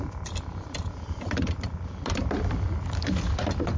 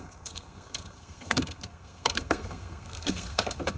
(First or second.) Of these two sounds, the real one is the first